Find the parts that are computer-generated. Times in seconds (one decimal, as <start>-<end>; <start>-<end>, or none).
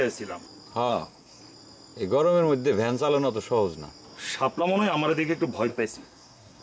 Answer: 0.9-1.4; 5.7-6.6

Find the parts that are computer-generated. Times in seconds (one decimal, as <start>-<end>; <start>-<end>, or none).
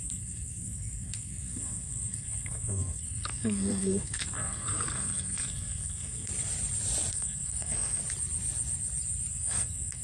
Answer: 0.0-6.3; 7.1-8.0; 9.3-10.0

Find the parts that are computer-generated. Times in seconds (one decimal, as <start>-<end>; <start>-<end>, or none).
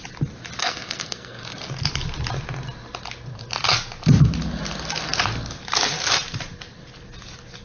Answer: 0.6-1.4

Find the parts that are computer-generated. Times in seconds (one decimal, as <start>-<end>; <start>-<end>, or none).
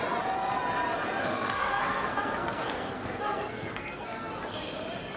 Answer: 1.2-4.3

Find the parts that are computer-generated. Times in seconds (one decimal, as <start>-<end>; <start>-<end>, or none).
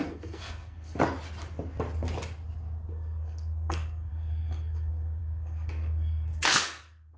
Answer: 0.0-1.0; 2.9-7.2